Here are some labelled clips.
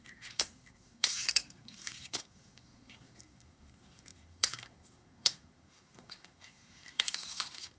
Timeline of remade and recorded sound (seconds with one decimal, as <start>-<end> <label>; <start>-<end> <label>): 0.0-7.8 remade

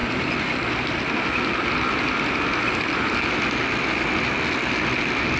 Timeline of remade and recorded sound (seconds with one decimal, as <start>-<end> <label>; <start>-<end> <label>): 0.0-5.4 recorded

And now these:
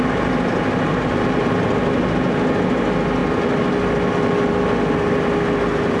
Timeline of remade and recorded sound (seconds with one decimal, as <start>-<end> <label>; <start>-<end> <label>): 0.0-6.0 recorded